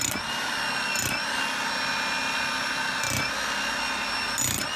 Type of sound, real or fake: real